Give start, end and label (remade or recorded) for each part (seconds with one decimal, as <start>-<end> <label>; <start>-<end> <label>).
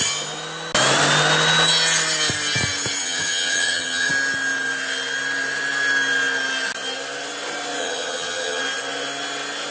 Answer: 0.0-3.0 recorded; 3.0-4.1 remade; 4.1-7.8 recorded; 7.8-8.6 remade; 8.6-9.7 recorded